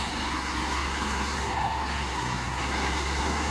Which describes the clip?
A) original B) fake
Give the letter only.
B